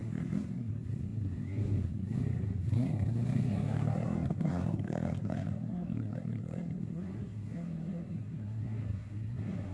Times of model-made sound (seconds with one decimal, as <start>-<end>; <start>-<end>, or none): 0.0-9.7